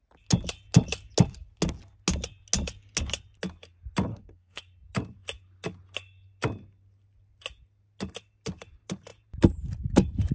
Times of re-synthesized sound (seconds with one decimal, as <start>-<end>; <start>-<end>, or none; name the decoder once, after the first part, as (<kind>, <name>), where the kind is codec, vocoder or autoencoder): 4.1-4.6 (codec, SNAC)